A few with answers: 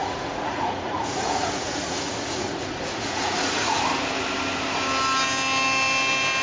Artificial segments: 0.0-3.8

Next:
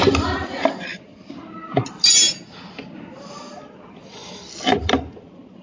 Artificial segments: none

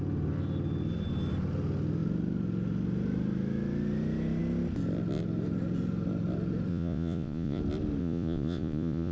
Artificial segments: 6.7-7.6; 8.0-9.1